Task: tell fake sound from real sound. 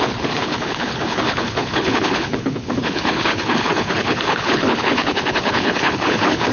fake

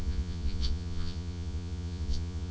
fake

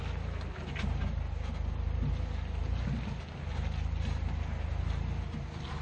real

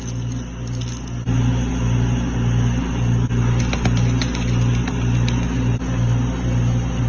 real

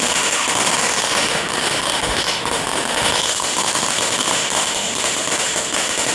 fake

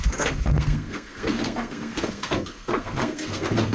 fake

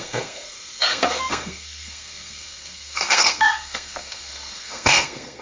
fake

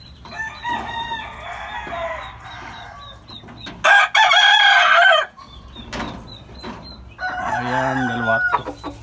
real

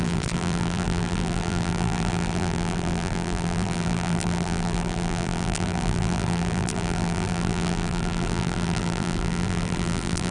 fake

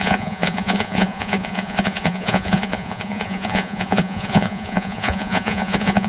fake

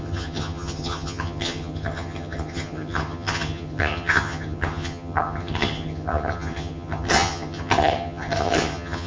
fake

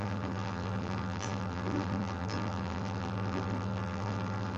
fake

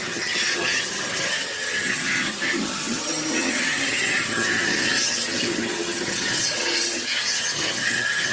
fake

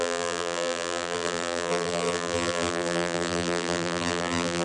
fake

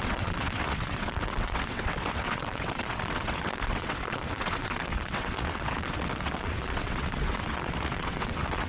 fake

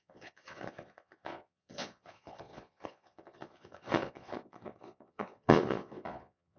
fake